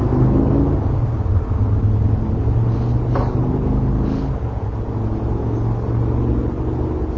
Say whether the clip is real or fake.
real